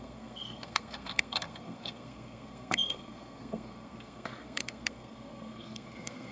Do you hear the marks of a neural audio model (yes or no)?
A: yes